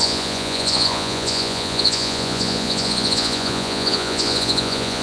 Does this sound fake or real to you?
fake